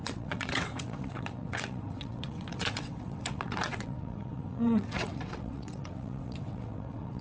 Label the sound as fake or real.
fake